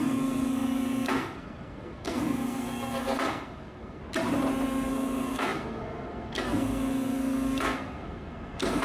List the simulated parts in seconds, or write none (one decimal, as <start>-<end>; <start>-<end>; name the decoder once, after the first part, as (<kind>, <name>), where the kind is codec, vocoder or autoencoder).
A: 0.0-4.0 (codec, SNAC); 4.9-8.8